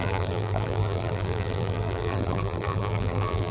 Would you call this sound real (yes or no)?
no